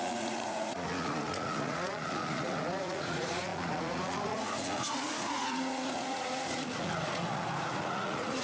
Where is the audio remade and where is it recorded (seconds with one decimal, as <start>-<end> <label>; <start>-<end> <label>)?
0.0-8.4 remade